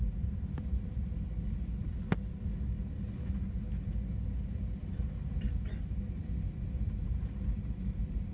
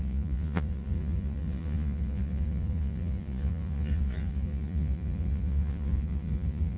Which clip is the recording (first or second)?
first